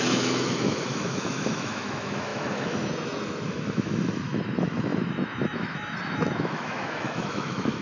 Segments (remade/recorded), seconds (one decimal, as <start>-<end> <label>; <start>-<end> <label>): 0.0-7.8 remade